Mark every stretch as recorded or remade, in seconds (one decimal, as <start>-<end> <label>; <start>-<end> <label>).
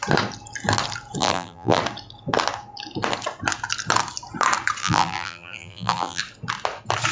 0.0-1.2 recorded; 1.2-1.8 remade; 1.8-4.8 recorded; 4.8-6.2 remade; 6.2-7.1 recorded